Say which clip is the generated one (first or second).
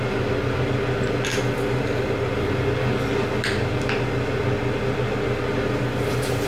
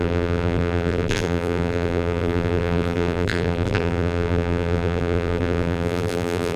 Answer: second